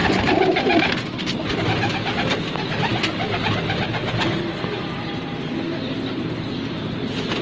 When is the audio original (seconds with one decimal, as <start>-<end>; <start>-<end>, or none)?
0.0-7.4